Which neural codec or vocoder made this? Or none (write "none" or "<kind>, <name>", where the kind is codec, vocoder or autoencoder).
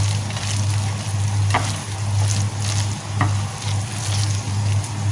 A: none